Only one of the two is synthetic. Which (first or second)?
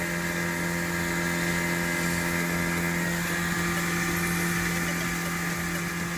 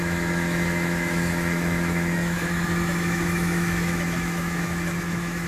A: second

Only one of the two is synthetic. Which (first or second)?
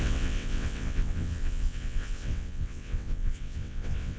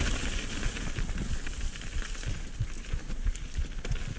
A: first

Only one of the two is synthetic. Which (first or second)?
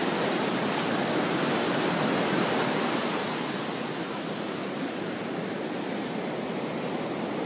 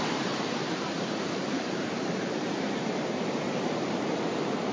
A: second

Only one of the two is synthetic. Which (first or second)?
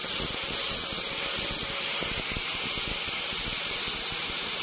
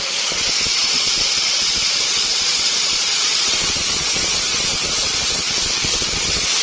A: second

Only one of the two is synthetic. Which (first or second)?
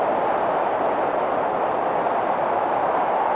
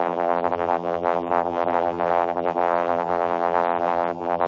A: second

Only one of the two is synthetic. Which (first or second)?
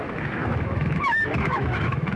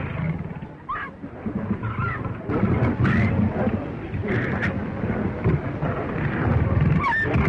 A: first